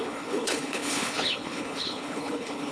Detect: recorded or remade remade